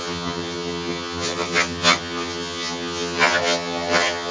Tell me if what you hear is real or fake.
fake